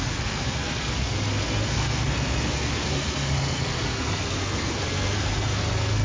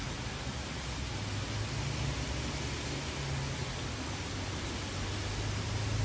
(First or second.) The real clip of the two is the second